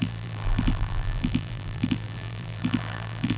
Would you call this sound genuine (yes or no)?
no